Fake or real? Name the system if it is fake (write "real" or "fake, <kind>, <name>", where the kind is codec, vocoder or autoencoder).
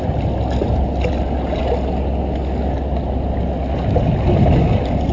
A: real